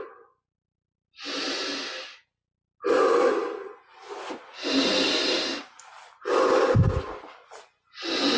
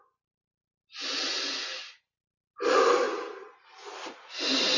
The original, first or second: first